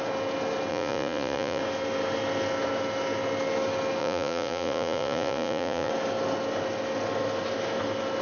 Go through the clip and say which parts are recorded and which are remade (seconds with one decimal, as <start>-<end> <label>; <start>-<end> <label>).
0.0-0.7 recorded; 0.7-1.6 remade; 1.6-4.0 recorded; 4.0-5.9 remade; 5.9-8.2 recorded